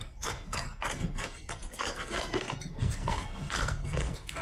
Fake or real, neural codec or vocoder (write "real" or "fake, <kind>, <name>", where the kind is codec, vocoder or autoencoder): fake, codec, SNAC